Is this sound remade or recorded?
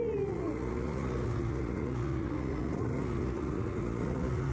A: remade